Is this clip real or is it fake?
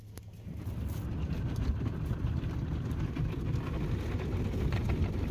real